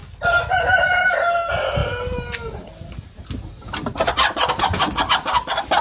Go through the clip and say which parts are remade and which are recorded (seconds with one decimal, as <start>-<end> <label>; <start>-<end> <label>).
0.0-5.8 recorded